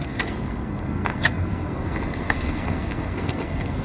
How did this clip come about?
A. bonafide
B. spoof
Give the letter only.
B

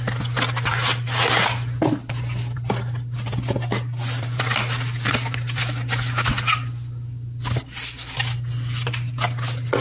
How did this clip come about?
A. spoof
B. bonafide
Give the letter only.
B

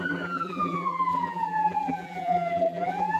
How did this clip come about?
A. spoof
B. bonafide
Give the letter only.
A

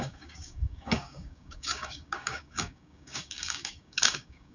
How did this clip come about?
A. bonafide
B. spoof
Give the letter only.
B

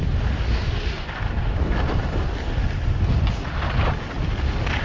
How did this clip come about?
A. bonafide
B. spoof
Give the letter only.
A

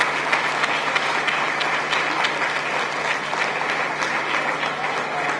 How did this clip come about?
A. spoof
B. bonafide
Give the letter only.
B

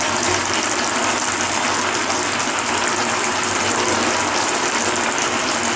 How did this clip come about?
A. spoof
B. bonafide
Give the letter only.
A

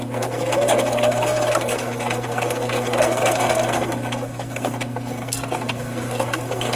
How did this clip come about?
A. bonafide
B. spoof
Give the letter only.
B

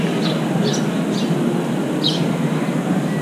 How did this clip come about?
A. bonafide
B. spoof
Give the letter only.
A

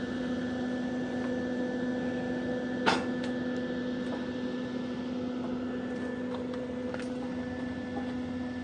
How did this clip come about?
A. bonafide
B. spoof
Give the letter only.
A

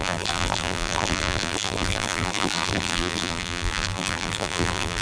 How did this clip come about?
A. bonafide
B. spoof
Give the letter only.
B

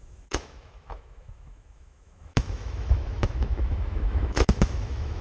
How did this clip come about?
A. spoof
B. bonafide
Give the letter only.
A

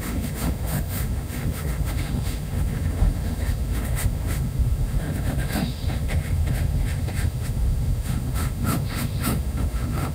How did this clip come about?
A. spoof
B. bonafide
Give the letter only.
A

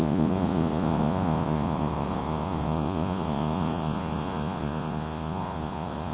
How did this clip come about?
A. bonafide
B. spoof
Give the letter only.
B